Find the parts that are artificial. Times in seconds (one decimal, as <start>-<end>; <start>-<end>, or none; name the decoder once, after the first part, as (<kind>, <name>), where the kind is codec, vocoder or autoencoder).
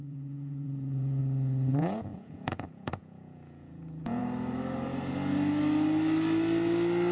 0.0-1.2 (vocoder, Vocos); 1.7-4.2